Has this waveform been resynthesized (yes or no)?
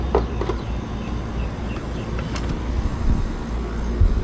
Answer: no